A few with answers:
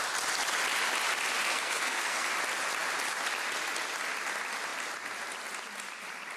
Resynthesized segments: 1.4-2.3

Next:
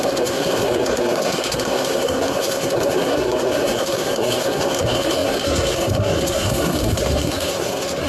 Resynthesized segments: 0.0-8.1